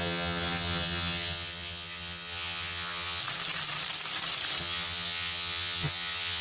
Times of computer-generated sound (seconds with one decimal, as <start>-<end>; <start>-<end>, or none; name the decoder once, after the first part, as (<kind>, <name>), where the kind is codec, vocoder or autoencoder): 0.0-3.2 (vocoder, HiFi-GAN); 4.6-6.4